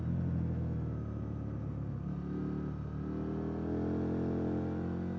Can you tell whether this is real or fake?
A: real